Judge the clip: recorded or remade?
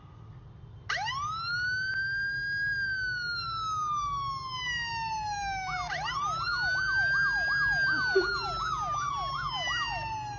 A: recorded